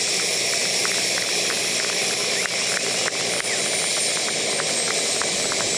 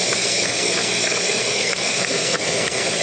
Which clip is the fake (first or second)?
second